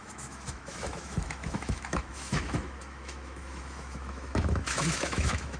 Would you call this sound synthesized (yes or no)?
yes